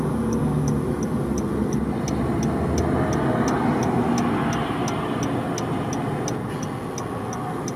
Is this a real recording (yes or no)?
yes